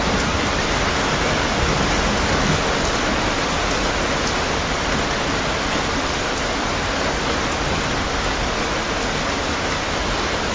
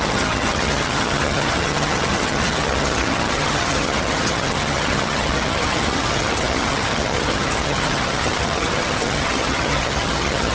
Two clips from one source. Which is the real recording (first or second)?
first